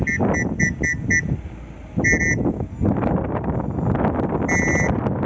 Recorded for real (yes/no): yes